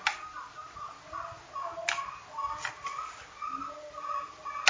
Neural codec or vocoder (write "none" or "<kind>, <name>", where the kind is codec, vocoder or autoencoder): none